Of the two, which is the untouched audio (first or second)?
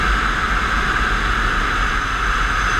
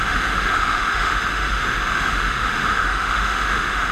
first